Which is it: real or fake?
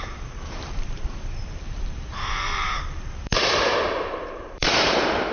fake